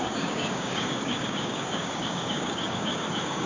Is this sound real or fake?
fake